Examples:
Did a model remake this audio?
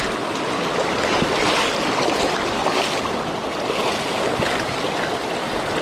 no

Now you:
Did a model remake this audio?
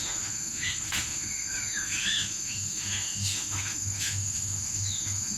yes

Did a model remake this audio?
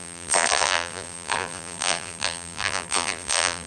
yes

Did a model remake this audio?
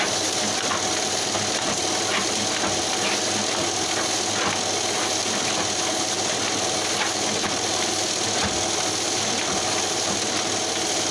no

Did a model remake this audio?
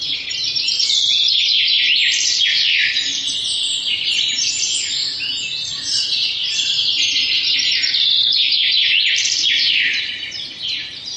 yes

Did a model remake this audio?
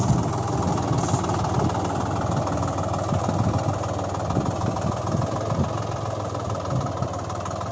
no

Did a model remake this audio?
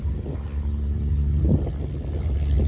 no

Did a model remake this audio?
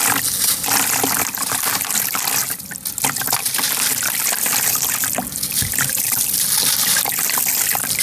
no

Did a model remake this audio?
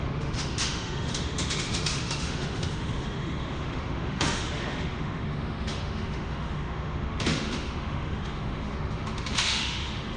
yes